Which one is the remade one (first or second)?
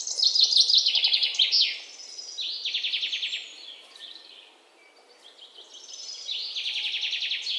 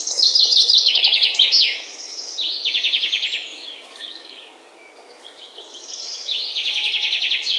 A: second